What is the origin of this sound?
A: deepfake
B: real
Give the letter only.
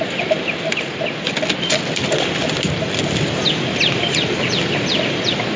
B